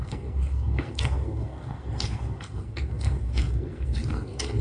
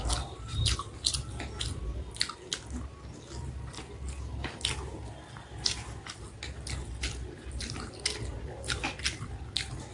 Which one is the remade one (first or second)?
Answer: first